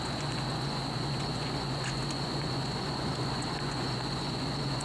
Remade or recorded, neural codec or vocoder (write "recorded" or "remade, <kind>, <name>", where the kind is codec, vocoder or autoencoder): remade, vocoder, Vocos